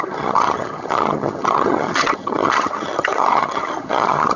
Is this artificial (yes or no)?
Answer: yes